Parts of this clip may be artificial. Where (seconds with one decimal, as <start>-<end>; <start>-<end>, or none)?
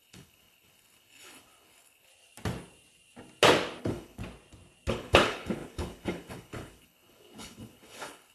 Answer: 0.0-2.1; 3.8-4.2; 4.9-8.3